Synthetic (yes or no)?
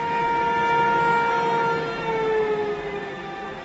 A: no